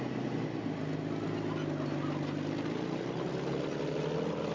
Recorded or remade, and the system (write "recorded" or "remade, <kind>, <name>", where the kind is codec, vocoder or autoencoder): recorded